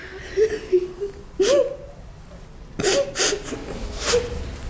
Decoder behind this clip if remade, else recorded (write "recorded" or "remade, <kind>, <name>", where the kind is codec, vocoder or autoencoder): recorded